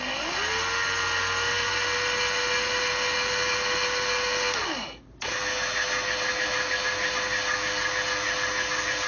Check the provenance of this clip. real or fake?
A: real